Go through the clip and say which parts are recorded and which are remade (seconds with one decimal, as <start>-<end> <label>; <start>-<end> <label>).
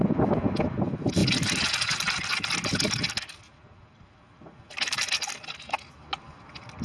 0.0-6.8 recorded